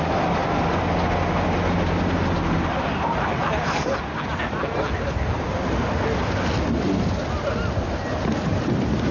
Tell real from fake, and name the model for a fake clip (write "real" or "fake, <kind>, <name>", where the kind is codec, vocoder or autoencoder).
real